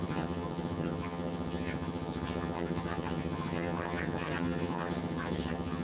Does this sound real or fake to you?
fake